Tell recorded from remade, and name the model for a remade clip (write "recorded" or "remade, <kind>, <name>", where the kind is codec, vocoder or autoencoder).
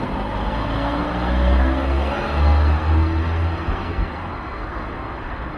remade, codec, SNAC